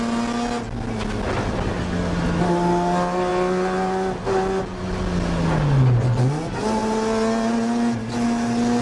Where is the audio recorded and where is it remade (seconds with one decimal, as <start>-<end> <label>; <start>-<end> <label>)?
0.0-8.8 recorded